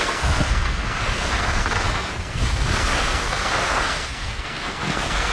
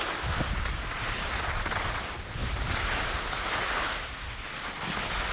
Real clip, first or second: second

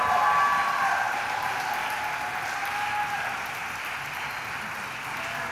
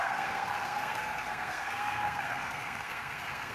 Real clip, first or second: first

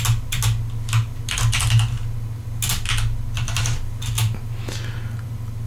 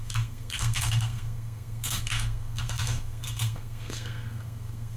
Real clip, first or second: first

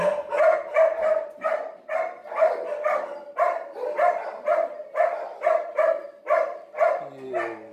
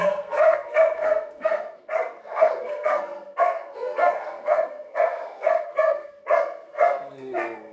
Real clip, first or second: first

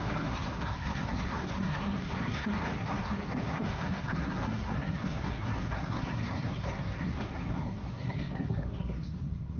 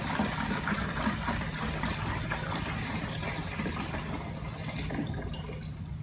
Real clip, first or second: second